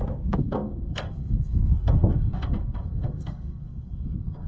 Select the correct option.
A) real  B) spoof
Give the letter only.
B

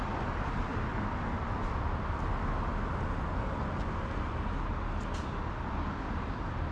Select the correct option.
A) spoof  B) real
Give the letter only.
B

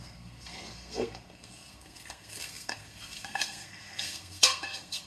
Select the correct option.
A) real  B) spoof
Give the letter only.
B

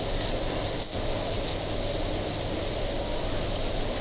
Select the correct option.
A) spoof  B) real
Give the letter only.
B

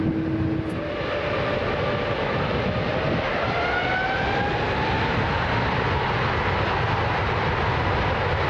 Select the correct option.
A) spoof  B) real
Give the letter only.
B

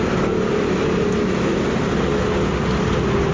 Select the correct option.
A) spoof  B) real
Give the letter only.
B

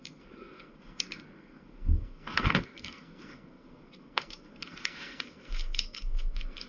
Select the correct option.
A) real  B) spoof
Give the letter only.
B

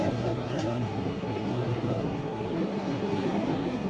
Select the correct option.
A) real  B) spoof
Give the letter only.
B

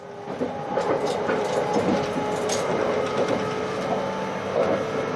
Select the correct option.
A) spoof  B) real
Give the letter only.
B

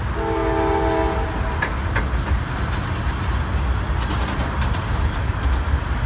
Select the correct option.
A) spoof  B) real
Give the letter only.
B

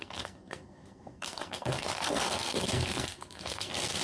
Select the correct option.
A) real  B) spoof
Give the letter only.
B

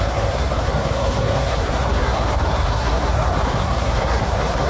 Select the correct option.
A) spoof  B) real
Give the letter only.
A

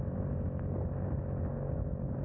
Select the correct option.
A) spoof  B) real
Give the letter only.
B